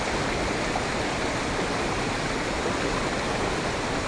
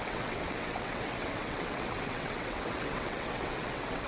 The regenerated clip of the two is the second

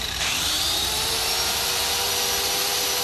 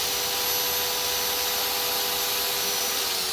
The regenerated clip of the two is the first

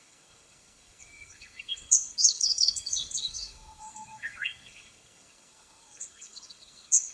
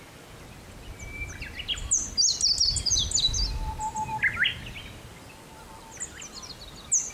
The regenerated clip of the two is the first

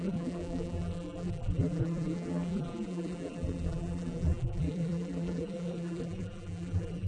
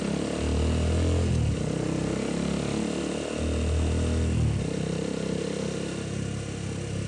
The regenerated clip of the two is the first